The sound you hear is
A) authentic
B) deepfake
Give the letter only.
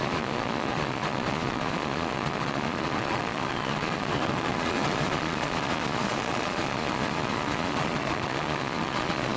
B